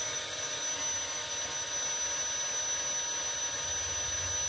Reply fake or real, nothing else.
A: real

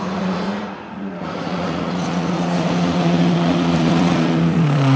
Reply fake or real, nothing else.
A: fake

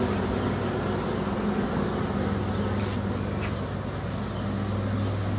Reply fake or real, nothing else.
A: real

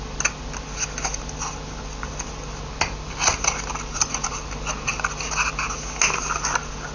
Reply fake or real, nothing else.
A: real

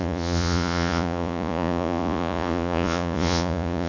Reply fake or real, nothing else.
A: fake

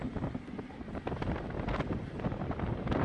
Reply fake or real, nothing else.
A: real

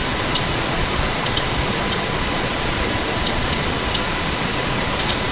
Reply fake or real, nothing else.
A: fake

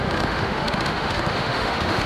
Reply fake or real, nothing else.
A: fake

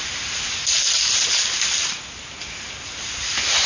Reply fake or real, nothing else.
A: real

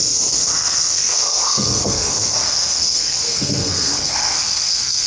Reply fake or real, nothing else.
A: fake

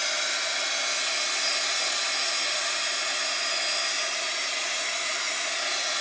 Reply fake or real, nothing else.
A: real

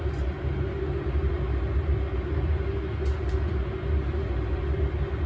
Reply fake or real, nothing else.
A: real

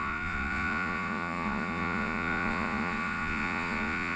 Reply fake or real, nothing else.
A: fake